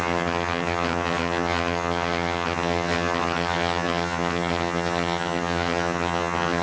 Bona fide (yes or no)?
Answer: no